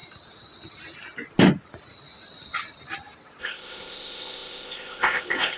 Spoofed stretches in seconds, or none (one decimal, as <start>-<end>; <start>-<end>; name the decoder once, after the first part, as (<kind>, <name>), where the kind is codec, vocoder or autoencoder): 3.4-5.6 (codec, ZipCodec)